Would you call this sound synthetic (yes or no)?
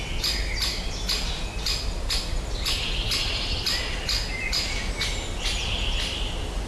no